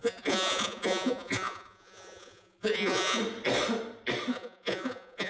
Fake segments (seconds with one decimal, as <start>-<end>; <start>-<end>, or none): 0.0-3.2; 4.3-5.3